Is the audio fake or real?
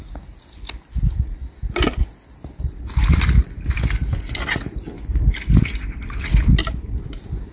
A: real